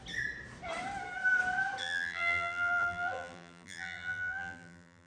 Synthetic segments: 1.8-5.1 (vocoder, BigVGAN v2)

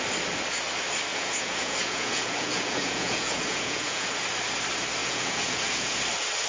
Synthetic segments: 1.1-4.1 (vocoder, Vocos); 5.0-6.0